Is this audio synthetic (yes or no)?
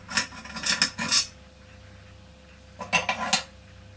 no